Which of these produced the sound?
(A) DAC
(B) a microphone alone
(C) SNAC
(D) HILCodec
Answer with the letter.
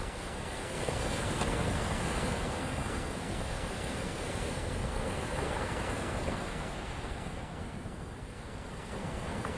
C